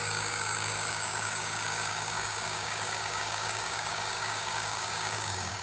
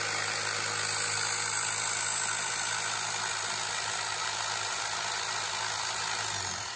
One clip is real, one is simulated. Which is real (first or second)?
second